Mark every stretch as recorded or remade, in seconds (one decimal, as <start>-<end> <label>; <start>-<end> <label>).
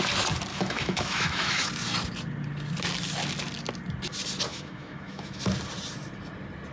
0.0-0.5 recorded; 0.5-1.7 remade; 1.7-4.5 recorded; 4.5-5.4 remade; 5.4-6.7 recorded